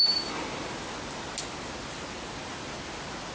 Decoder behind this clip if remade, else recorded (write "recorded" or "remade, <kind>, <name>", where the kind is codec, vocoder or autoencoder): recorded